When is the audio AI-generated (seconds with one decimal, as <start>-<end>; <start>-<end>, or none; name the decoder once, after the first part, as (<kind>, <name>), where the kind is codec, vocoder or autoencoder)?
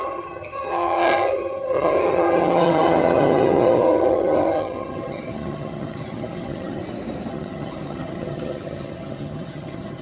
0.0-6.8 (vocoder, HiFi-GAN); 7.3-10.0